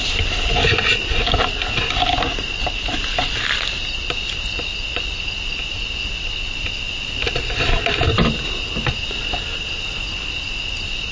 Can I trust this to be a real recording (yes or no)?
yes